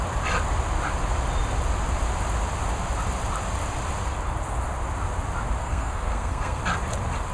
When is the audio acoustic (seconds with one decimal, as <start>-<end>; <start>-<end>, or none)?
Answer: 0.0-5.6; 6.6-7.3